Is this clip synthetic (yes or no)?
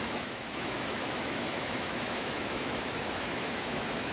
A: yes